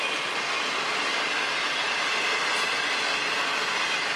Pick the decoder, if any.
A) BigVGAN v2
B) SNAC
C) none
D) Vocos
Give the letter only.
C